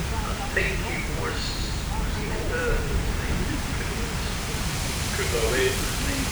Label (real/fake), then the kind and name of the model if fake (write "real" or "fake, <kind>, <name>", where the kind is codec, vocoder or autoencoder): fake, vocoder, BigVGAN v2